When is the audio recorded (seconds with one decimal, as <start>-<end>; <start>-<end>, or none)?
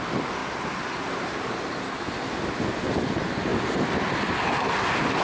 0.0-0.4; 1.5-5.2